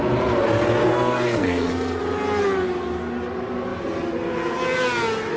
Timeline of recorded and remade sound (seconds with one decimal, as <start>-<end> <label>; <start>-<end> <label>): 0.0-0.8 recorded; 0.8-2.0 remade; 2.0-5.4 recorded